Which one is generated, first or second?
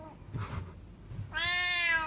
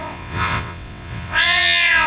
second